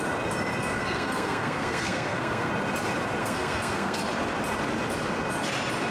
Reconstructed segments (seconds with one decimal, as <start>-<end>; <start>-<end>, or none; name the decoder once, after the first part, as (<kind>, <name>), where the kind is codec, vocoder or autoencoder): 0.6-2.5 (codec, SNAC); 3.2-4.0